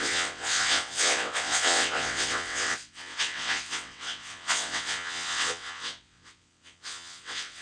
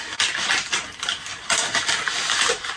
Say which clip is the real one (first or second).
second